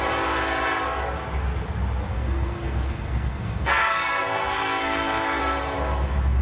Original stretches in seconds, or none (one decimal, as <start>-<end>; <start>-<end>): 0.0-2.1; 5.4-6.4